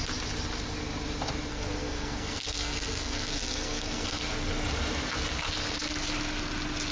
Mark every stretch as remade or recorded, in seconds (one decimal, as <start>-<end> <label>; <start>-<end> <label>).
0.0-1.5 recorded; 1.5-4.2 remade; 4.2-6.9 recorded

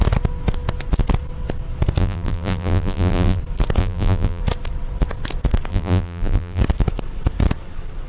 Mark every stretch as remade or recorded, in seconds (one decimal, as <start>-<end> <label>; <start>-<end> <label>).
0.0-2.0 recorded; 2.0-3.4 remade; 3.4-3.8 recorded; 3.8-4.4 remade; 4.4-5.7 recorded; 5.7-6.6 remade; 6.6-8.1 recorded

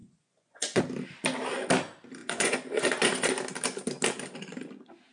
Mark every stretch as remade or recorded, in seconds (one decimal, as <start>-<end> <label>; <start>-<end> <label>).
0.0-0.8 remade; 0.8-2.2 recorded; 2.2-3.3 remade; 3.3-5.1 recorded

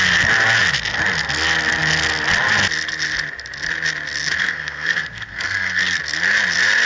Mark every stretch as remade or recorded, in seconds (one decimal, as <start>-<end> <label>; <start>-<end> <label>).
0.0-4.4 recorded; 4.4-6.0 remade; 6.0-6.9 recorded

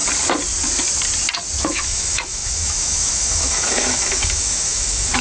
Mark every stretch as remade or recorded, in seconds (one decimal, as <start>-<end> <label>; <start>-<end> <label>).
0.0-1.6 recorded; 1.6-5.2 remade

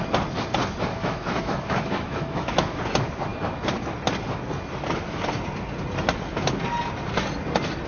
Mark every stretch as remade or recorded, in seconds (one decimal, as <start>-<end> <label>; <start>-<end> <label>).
0.0-0.9 recorded; 0.9-2.8 remade; 2.8-7.9 recorded